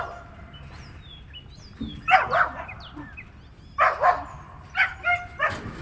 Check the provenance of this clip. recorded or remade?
recorded